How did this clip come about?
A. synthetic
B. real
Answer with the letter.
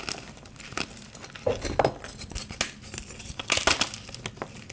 B